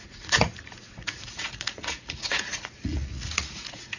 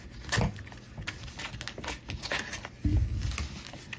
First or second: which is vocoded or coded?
first